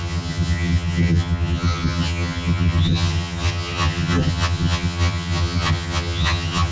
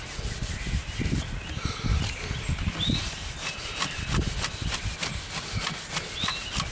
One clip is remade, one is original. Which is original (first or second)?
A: second